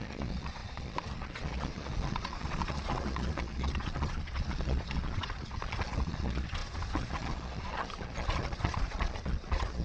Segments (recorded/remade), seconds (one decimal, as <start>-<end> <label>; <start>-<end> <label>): 0.0-9.8 remade